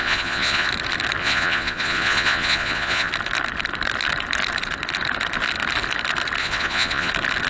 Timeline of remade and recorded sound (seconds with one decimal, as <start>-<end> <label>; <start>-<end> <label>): 0.0-0.7 remade; 0.7-1.2 recorded; 1.2-3.1 remade; 3.1-6.4 recorded; 6.4-7.1 remade; 7.1-7.5 recorded